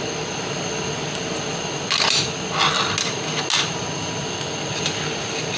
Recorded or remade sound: recorded